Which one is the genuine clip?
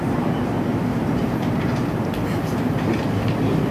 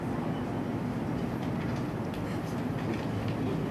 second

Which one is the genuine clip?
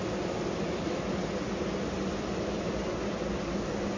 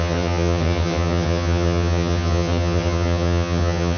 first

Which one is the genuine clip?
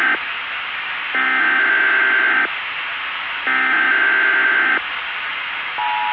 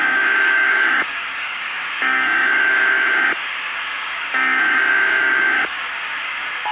first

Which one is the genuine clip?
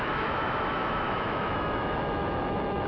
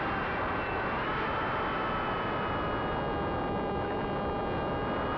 second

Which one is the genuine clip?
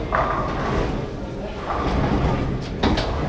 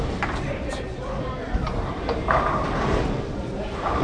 first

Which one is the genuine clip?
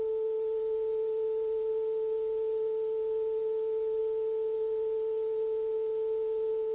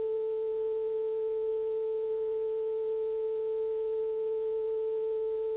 first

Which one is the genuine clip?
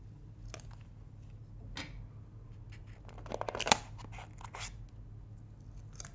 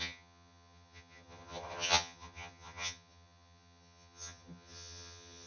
first